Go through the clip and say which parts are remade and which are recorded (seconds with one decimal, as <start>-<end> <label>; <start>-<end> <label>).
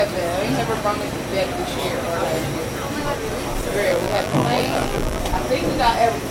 0.0-3.9 recorded; 3.9-5.2 remade; 5.2-6.3 recorded